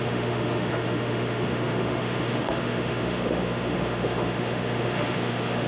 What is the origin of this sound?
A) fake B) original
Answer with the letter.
A